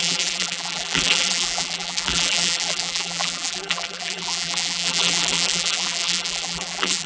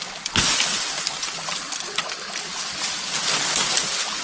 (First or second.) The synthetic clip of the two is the first